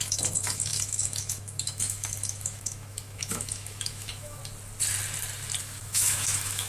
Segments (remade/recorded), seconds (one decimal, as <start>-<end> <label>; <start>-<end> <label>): 0.0-4.4 remade; 4.4-5.6 recorded; 5.6-6.7 remade

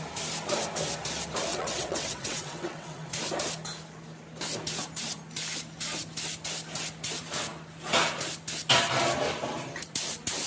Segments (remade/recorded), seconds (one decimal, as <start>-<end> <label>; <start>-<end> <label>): 0.0-1.5 recorded; 1.5-3.1 remade; 3.1-10.5 recorded